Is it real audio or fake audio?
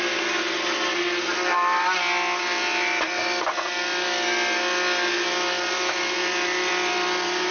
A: real